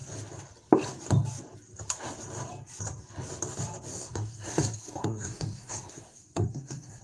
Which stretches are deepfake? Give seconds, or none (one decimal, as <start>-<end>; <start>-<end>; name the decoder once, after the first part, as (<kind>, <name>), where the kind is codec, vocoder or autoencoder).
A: 3.9-7.0 (codec, SNAC)